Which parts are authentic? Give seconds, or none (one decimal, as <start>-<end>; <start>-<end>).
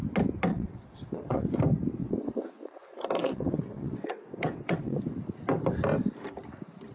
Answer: 0.0-0.5; 1.5-2.0; 5.0-6.9